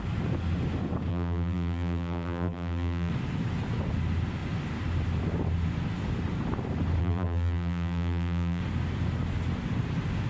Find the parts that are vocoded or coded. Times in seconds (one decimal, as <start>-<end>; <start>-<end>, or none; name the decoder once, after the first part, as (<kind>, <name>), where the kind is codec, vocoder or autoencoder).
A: 1.1-3.1 (vocoder, BigVGAN v2); 7.0-8.6